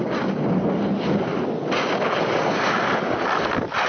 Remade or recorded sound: recorded